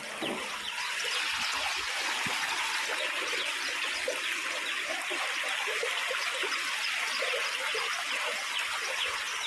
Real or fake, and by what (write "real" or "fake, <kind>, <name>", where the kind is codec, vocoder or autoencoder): real